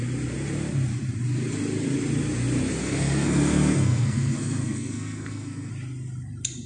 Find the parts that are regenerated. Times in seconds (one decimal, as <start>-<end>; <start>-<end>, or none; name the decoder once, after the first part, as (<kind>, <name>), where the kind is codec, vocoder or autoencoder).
2.8-5.7 (codec, SNAC)